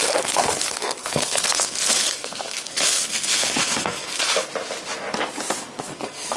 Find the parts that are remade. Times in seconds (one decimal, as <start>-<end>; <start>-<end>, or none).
0.0-4.5; 5.8-6.4